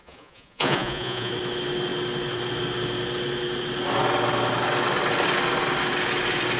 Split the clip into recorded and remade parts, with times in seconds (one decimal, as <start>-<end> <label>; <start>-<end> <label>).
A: 0.0-1.3 remade; 1.3-6.6 recorded